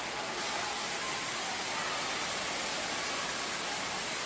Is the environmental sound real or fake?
real